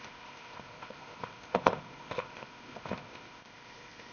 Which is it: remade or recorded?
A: remade